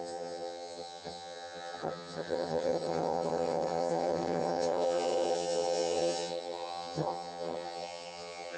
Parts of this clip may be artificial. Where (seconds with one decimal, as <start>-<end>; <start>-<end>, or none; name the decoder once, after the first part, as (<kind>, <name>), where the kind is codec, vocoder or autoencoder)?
0.0-8.6 (vocoder, HiFi-GAN)